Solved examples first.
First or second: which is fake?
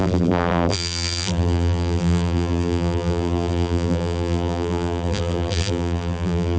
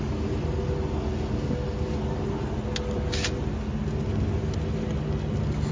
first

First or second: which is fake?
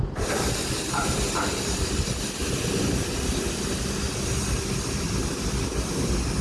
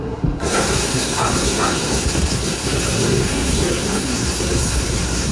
second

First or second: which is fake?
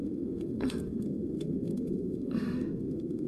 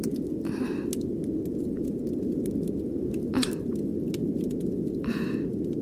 first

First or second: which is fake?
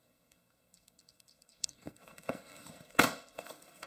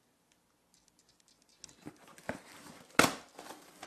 first